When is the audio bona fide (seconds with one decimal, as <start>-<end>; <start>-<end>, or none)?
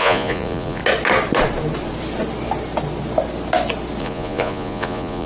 0.8-4.0